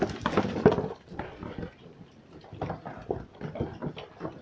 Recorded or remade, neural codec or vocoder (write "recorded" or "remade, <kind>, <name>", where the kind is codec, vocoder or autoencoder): recorded